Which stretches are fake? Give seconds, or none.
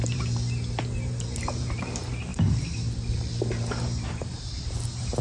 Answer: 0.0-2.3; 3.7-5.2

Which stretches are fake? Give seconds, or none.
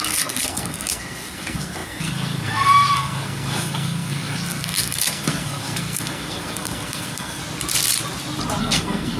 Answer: 0.0-7.4; 8.6-9.2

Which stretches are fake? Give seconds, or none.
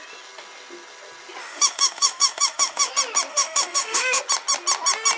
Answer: 1.4-2.9; 3.3-4.2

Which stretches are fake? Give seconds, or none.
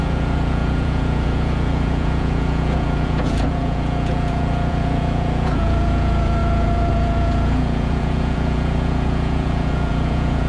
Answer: 0.0-10.5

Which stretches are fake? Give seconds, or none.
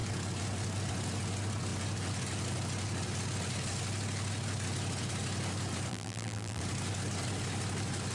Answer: 5.9-6.6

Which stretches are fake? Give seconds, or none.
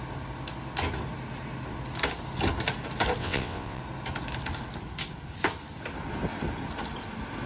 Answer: 3.2-3.8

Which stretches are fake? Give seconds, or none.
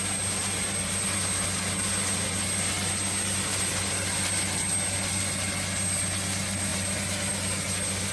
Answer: none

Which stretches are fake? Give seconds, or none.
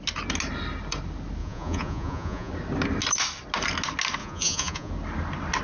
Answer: 1.4-2.5; 4.2-4.9